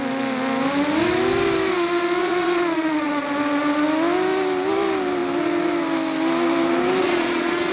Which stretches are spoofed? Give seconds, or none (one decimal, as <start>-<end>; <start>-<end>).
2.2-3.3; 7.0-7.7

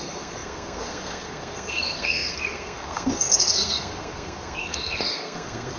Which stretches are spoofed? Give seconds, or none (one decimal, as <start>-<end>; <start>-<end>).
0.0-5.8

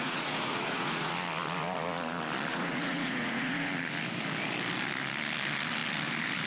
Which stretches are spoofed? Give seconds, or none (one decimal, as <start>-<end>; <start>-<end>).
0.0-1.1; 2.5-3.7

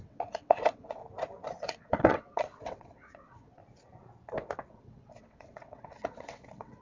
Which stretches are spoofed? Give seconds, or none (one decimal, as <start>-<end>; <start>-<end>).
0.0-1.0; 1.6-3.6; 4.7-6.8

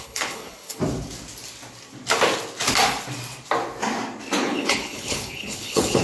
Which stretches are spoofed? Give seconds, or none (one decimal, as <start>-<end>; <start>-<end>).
0.0-0.8; 4.4-6.0